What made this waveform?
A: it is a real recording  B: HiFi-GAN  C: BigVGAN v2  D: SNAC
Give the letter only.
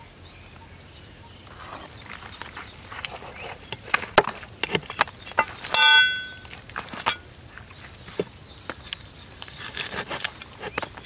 A